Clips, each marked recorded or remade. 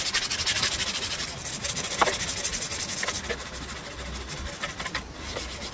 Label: recorded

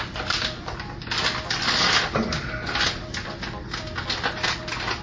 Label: recorded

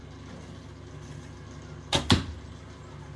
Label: recorded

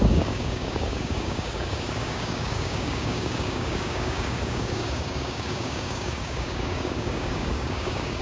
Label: remade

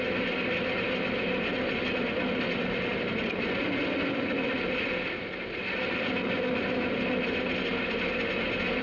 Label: recorded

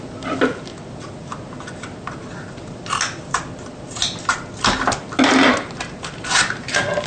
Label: recorded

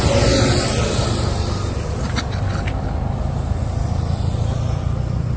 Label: recorded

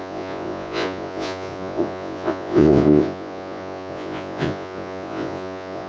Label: remade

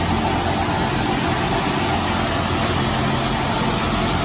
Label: recorded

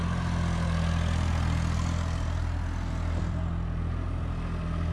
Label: recorded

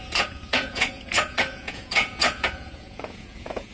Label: remade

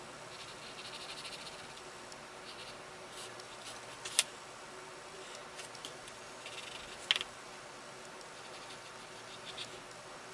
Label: recorded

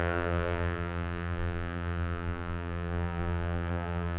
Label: remade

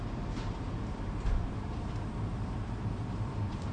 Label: remade